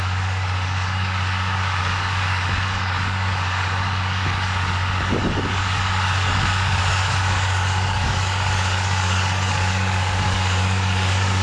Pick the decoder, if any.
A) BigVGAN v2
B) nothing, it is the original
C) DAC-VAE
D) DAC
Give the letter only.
D